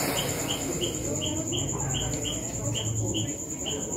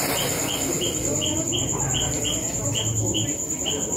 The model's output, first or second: second